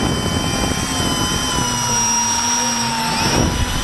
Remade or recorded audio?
recorded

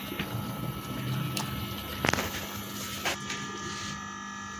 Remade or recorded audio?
recorded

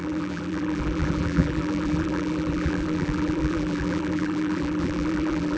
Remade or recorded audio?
remade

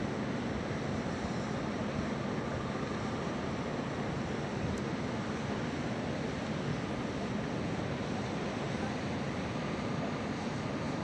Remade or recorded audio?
recorded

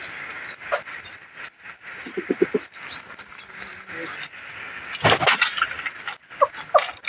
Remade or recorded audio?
recorded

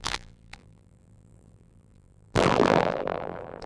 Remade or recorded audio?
remade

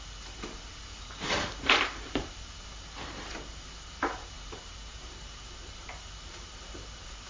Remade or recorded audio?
remade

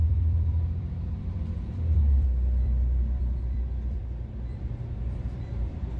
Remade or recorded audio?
remade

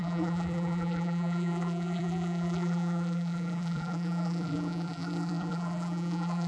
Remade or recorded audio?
remade